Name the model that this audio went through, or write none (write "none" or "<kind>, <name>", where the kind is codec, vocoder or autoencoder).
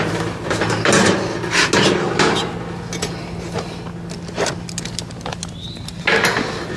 none